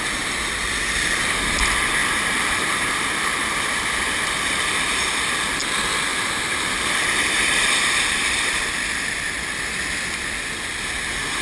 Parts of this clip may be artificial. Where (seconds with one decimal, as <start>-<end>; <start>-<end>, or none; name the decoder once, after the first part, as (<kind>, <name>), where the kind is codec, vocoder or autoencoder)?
2.0-3.7 (vocoder, BigVGAN v2); 6.1-8.6